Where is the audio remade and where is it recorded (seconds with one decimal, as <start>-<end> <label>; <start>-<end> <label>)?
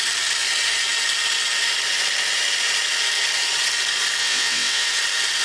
0.0-4.2 recorded; 4.2-4.9 remade; 4.9-5.4 recorded